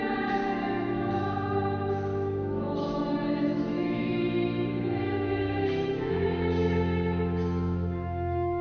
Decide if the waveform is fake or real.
fake